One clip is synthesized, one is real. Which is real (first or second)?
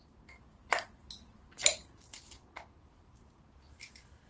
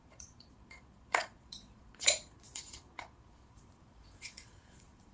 first